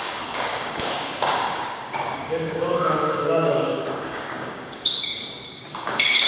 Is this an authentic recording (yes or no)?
no